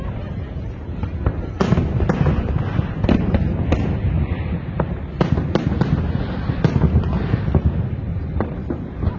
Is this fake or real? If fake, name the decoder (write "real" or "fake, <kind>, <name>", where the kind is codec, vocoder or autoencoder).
real